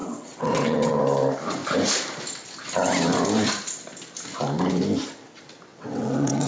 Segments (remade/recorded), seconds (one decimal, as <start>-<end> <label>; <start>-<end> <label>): 0.0-1.0 remade; 1.0-5.7 recorded; 5.7-6.5 remade